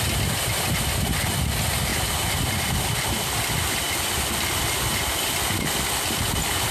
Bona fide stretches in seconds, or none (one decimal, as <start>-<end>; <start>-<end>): 0.0-1.9; 4.2-6.7